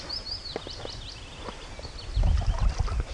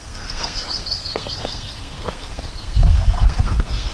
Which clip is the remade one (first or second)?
second